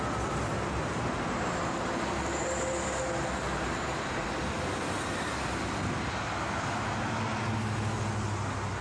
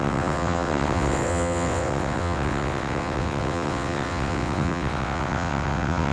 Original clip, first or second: first